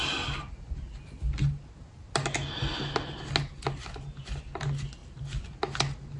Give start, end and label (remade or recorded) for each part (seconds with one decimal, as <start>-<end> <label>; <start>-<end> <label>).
0.0-6.2 recorded